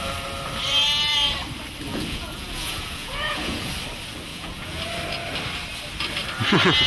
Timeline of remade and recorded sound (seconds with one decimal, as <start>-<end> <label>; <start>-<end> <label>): 0.0-1.9 recorded; 1.9-3.7 remade; 3.7-4.3 recorded; 4.3-4.8 remade; 4.8-6.9 recorded